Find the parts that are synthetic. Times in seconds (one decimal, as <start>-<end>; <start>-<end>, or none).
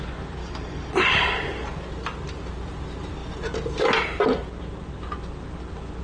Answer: 0.4-0.9